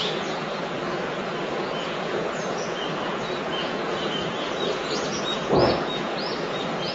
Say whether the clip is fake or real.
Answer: fake